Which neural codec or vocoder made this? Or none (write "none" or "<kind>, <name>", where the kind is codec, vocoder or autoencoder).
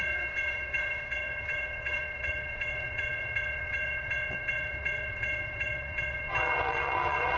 vocoder, WaveNeXt